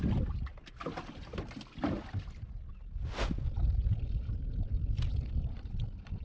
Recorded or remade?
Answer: recorded